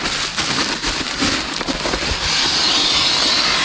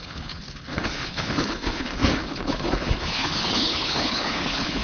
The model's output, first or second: second